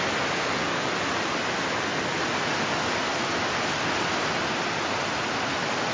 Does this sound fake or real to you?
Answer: real